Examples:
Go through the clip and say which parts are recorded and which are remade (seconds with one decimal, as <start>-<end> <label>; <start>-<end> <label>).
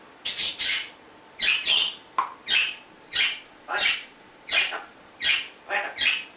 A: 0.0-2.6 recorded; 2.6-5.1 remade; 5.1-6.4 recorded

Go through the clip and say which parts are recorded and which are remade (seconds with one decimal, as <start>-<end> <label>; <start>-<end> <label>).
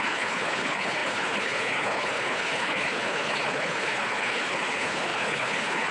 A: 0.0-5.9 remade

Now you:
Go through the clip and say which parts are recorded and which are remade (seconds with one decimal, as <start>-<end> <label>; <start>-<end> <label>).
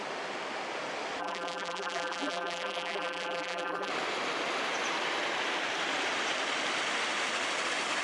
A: 0.0-1.2 recorded; 1.2-3.9 remade; 3.9-8.0 recorded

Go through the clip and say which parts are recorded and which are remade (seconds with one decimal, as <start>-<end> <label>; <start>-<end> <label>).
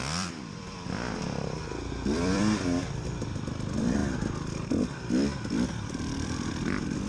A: 0.0-7.1 remade